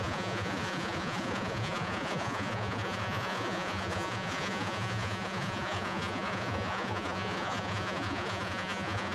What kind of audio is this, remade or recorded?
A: remade